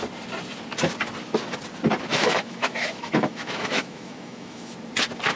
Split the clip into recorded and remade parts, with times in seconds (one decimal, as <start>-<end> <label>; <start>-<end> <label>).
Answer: 0.0-2.1 recorded; 2.1-4.7 remade; 4.7-5.4 recorded